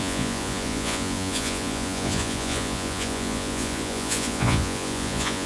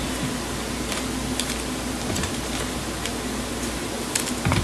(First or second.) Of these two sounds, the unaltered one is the second